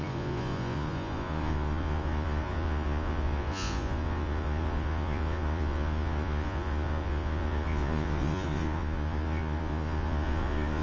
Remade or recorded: remade